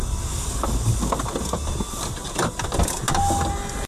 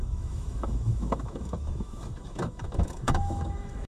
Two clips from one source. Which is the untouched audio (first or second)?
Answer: first